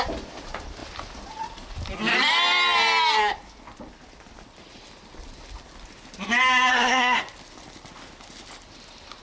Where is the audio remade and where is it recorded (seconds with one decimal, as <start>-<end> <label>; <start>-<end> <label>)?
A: 0.0-6.7 recorded; 6.7-7.2 remade; 7.2-9.2 recorded